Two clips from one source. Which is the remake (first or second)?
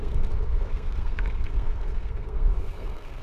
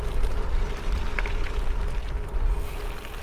first